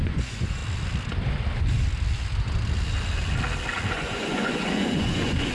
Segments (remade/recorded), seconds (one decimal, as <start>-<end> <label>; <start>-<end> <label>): 0.0-0.6 remade; 0.6-3.9 recorded; 3.9-5.5 remade